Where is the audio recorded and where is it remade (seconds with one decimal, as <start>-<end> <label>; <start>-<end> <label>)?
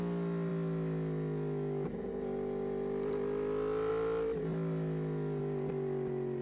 0.0-6.4 recorded